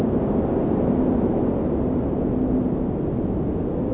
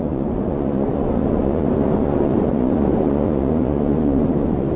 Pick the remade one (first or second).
second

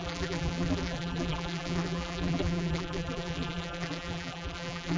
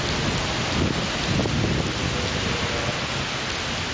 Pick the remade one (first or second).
first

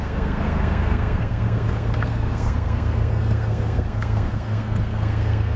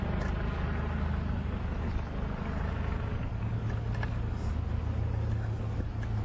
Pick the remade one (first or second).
first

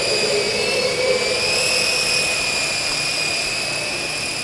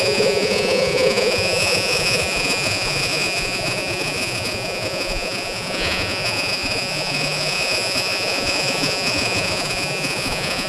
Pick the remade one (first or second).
second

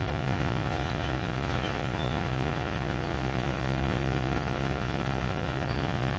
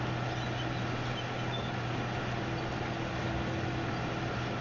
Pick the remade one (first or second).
first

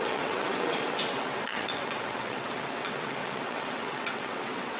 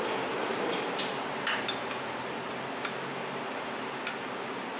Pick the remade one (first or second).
first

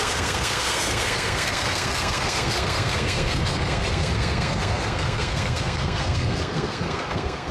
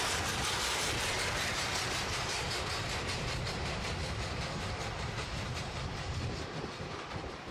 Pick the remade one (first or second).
first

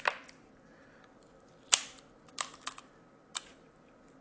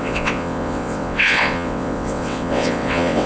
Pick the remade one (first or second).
second